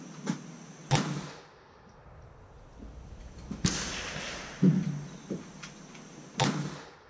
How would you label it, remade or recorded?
recorded